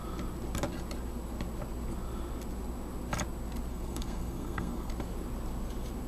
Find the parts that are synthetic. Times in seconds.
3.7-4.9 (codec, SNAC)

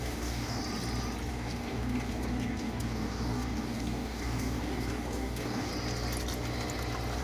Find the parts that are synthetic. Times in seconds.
0.0-0.6 (codec, DAC); 1.3-5.7

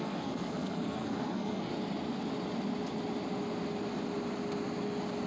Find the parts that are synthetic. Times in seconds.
0.0-1.7 (codec, SNAC)

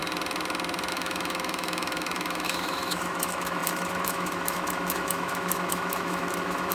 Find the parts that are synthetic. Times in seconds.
0.9-6.7 (autoencoder, DAC-VAE)

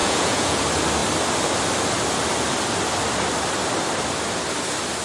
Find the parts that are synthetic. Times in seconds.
0.0-0.6 (vocoder, Vocos)

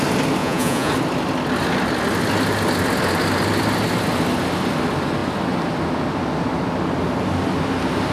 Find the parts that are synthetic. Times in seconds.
0.4-0.9 (vocoder, Vocos)